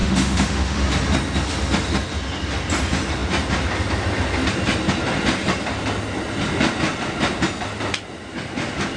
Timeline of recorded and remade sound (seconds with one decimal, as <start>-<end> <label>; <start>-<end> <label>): 0.0-0.8 remade; 0.8-9.0 recorded

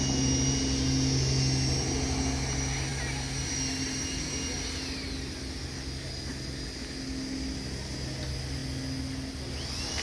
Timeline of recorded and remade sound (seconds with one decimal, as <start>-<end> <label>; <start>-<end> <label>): 0.0-10.0 recorded

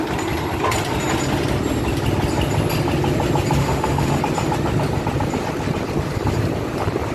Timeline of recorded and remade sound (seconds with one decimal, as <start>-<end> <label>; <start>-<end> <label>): 0.0-3.6 recorded; 3.6-4.2 remade; 4.2-7.1 recorded

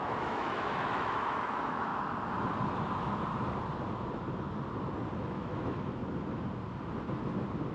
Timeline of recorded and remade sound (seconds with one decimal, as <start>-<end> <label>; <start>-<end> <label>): 0.0-1.9 remade; 1.9-5.2 recorded; 5.2-6.0 remade; 6.0-7.7 recorded

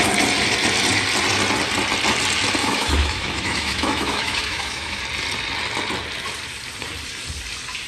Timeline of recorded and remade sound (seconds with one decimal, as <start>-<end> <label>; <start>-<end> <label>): 0.0-2.6 recorded; 2.6-5.0 remade; 5.0-7.9 recorded

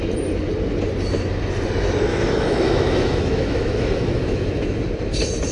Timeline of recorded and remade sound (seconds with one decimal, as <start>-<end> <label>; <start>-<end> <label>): 0.0-2.1 recorded; 2.1-4.8 remade; 4.8-5.5 recorded